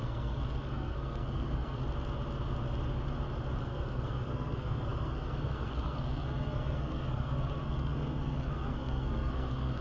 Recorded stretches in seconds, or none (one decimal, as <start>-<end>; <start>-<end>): 1.8-3.6